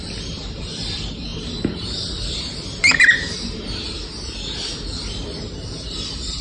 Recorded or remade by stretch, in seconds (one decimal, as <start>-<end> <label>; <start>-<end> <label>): 0.0-0.7 remade; 0.7-1.3 recorded; 1.3-2.9 remade; 2.9-6.4 recorded